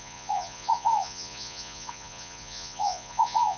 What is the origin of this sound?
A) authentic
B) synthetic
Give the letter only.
B